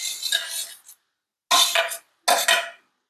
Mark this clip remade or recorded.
recorded